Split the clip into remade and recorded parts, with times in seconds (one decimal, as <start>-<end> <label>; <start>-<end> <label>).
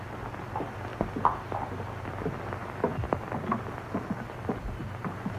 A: 0.0-5.4 recorded